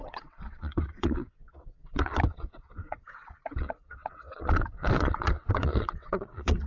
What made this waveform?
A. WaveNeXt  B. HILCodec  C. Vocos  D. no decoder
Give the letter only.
A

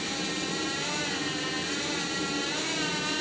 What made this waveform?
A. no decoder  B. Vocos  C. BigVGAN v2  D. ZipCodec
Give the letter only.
A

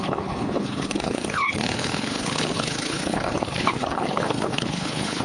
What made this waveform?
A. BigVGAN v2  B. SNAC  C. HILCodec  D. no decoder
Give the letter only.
C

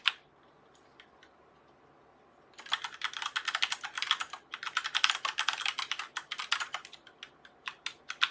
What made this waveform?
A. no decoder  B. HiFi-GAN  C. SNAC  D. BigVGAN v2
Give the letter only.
D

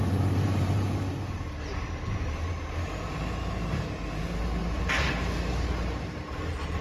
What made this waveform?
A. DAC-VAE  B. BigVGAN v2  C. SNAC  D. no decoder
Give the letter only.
B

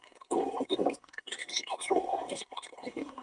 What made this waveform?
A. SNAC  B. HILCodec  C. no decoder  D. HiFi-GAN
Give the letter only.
A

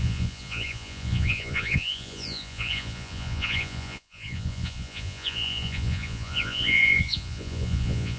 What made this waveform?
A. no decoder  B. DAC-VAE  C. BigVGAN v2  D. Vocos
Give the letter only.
D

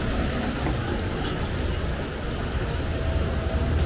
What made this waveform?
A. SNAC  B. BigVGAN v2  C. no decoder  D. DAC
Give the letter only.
C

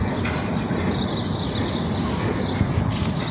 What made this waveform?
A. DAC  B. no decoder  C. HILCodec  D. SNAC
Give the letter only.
B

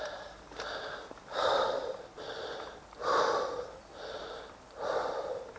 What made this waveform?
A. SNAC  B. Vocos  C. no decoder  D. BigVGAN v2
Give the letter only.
C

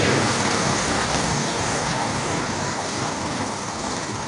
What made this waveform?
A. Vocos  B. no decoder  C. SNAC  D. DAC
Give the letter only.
D